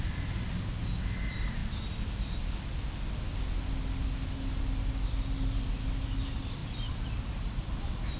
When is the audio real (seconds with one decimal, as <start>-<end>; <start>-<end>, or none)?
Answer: 0.0-8.2